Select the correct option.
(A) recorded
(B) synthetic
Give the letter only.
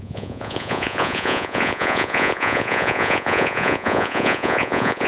B